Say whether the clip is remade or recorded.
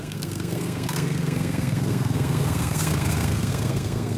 remade